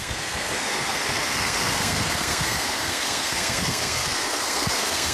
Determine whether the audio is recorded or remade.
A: remade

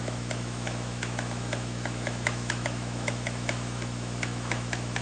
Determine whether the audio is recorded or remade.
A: remade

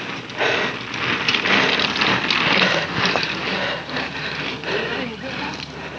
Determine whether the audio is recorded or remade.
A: remade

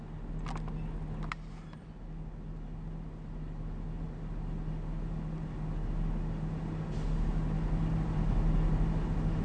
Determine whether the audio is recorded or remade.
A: recorded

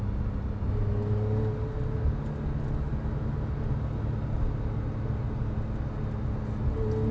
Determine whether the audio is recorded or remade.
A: recorded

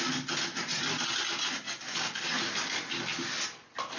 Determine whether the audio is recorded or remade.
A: recorded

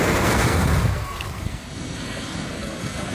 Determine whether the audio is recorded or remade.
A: remade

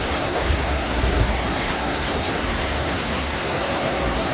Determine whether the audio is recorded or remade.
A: remade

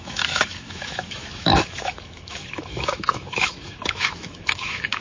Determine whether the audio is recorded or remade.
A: remade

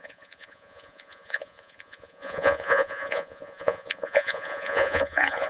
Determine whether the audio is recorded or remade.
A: remade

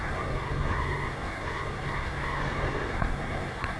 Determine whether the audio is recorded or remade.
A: remade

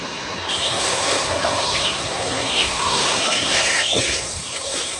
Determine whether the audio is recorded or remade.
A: remade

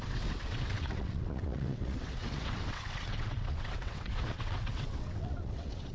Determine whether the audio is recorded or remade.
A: remade